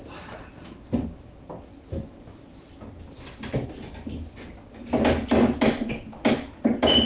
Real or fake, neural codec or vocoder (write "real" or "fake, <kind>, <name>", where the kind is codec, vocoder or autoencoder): real